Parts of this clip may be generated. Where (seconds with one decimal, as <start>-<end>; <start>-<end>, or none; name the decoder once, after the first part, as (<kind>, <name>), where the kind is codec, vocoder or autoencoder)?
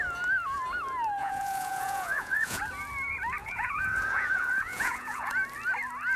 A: 1.2-2.6 (vocoder, Vocos); 3.4-5.3